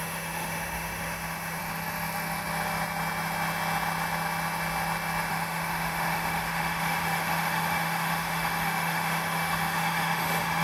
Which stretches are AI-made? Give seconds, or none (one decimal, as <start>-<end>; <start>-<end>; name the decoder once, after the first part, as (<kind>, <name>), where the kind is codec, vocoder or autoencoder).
0.0-1.6 (autoencoder, DAC-VAE); 5.3-10.6